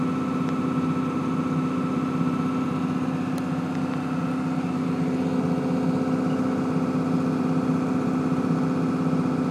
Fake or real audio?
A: real